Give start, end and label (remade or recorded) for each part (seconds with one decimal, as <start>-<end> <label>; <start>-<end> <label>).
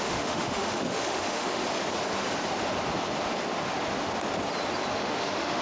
0.0-1.6 remade; 1.6-4.9 recorded; 4.9-5.6 remade